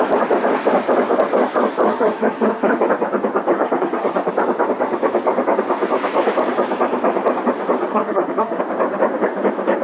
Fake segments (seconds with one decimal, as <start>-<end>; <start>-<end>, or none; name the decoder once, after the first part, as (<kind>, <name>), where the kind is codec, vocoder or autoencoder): 1.9-2.8 (codec, SNAC); 3.5-4.3; 7.9-8.6

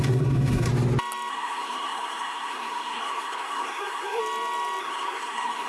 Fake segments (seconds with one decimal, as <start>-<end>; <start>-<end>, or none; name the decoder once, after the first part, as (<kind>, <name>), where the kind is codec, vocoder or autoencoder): 0.0-0.7 (codec, SNAC); 1.3-4.2; 4.8-5.7

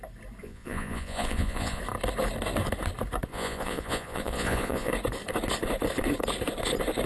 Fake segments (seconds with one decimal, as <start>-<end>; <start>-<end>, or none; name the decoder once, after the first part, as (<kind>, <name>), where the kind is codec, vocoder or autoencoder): 0.4-1.8 (vocoder, Vocos); 3.3-4.9

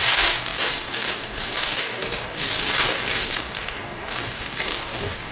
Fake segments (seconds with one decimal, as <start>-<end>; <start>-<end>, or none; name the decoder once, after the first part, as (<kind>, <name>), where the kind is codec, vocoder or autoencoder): 0.0-5.3 (codec, DAC)